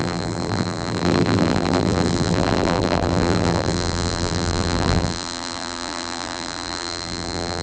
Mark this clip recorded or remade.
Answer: remade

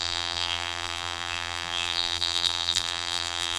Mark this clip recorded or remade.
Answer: remade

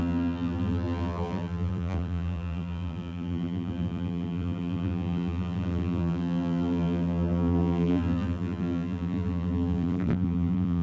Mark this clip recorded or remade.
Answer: remade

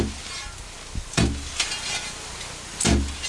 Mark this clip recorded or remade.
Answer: recorded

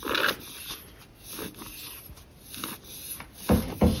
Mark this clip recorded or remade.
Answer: recorded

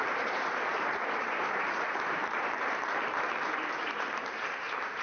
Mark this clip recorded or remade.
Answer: remade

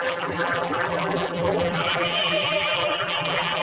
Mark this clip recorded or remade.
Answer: remade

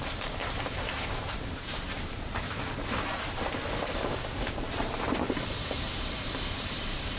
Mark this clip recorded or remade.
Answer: remade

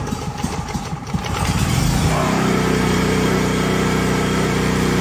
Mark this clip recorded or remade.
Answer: remade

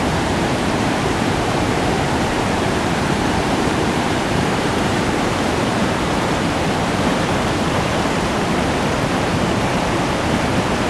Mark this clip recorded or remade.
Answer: remade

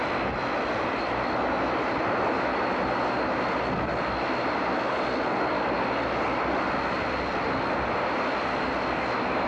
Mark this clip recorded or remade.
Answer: recorded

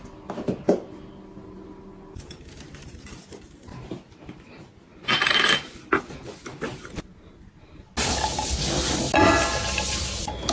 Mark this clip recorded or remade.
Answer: recorded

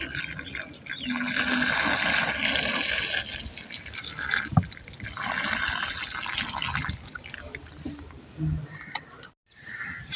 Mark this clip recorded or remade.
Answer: recorded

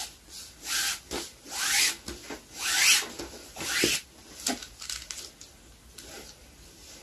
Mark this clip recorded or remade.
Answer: recorded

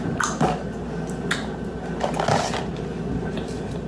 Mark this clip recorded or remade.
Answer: recorded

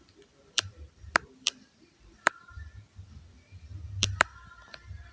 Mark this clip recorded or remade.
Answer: remade